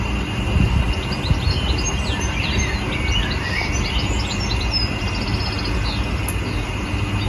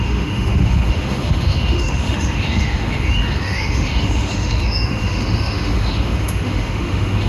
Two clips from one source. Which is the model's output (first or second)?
second